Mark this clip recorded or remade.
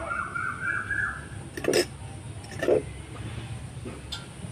recorded